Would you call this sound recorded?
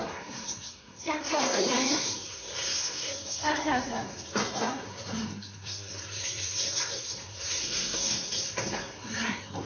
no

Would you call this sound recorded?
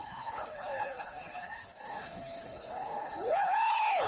no